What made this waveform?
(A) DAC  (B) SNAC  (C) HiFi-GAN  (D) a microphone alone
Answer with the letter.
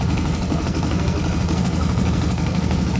B